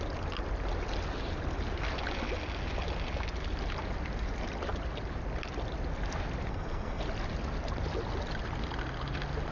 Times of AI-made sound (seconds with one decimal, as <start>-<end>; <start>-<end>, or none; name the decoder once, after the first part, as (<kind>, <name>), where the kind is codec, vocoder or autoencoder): 6.5-7.0 (codec, SNAC)